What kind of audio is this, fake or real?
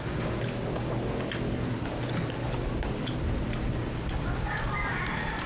real